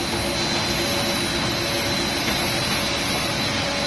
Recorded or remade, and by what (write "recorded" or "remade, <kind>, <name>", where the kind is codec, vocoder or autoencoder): recorded